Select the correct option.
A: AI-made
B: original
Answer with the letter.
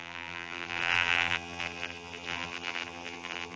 A